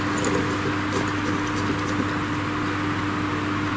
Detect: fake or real real